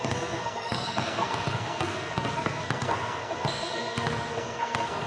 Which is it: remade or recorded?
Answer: remade